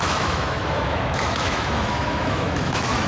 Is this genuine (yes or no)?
no